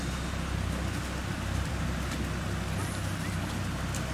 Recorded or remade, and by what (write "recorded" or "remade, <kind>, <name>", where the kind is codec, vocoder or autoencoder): recorded